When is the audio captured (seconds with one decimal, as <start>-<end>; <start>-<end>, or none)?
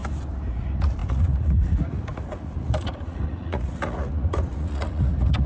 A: 0.0-0.5